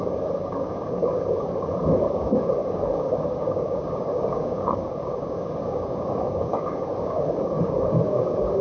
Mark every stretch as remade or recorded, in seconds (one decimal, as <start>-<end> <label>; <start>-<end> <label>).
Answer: 0.0-8.6 remade